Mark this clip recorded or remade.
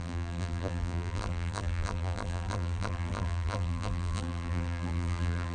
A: remade